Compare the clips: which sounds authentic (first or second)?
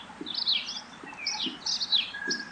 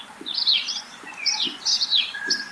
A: first